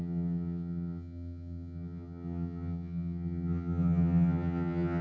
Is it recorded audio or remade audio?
remade